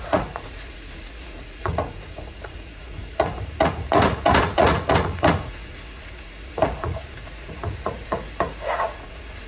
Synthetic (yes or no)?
yes